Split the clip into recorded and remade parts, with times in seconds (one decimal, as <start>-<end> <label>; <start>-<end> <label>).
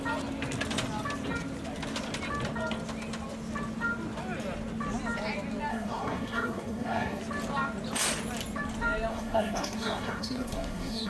0.0-5.7 recorded; 5.7-7.2 remade; 7.2-9.1 recorded; 9.1-11.1 remade